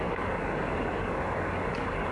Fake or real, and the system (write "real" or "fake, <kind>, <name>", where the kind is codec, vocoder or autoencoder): fake, codec, DAC